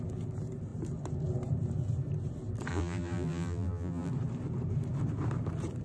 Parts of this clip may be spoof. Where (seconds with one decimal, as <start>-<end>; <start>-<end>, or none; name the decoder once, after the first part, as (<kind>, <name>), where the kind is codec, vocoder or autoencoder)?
2.7-4.1 (vocoder, BigVGAN v2)